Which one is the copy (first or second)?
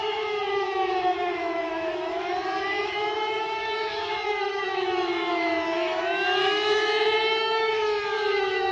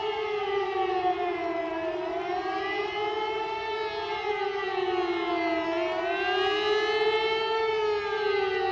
first